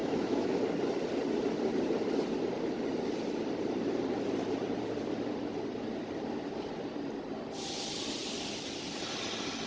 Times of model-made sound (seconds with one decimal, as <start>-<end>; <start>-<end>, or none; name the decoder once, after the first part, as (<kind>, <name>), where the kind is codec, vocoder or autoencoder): 0.0-0.6 (autoencoder, DAC-VAE)